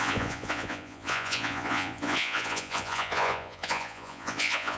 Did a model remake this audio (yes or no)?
yes